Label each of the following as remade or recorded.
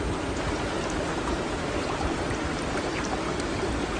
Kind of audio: recorded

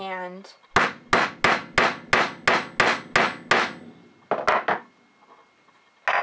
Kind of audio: recorded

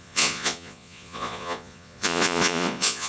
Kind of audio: remade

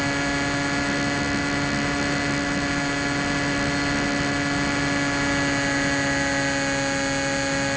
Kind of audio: recorded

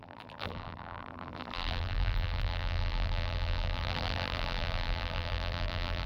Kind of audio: remade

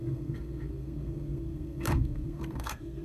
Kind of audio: remade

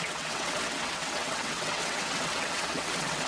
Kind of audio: remade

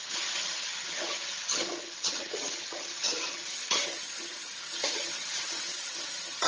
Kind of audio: remade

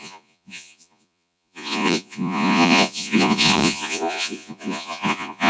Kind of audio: remade